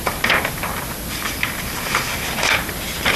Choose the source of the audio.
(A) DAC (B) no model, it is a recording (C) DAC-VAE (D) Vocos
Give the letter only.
B